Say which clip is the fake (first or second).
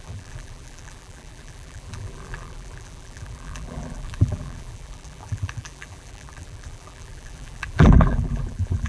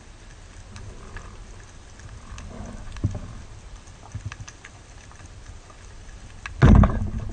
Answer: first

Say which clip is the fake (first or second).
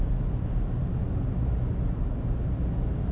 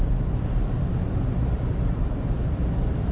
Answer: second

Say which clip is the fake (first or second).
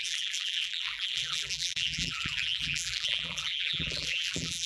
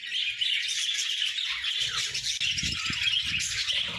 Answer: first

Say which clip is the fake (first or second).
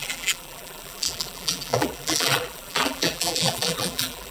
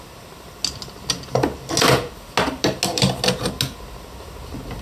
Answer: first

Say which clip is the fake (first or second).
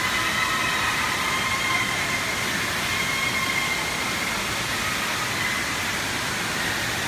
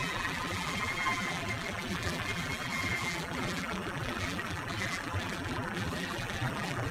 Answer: second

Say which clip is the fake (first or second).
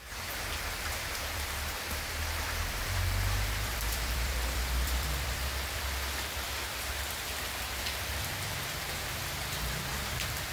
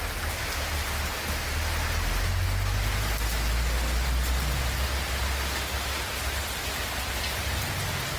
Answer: first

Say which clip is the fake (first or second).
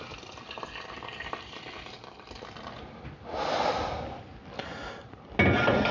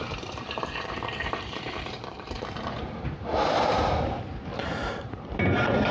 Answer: second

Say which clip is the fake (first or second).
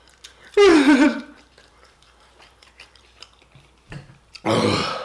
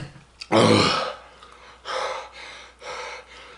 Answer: first